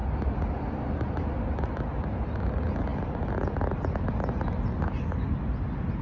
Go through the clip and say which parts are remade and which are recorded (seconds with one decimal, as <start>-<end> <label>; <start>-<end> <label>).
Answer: 0.0-6.0 recorded